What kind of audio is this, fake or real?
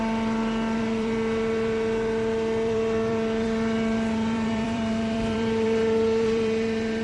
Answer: fake